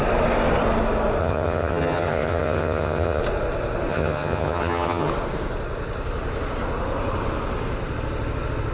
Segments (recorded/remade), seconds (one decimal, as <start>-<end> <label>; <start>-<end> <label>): 0.0-1.2 recorded; 1.2-3.2 remade; 3.2-3.9 recorded; 3.9-5.1 remade; 5.1-8.7 recorded